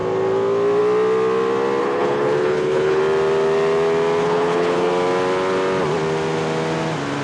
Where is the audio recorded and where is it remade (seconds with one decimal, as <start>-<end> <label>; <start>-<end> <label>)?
0.0-1.8 recorded; 1.8-3.0 remade; 3.0-4.2 recorded; 4.2-4.9 remade; 4.9-7.2 recorded